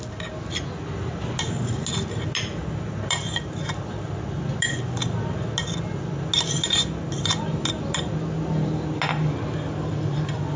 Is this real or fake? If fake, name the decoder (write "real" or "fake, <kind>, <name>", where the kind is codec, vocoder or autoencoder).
real